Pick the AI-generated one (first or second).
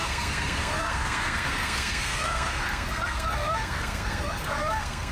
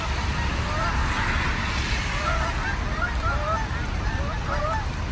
first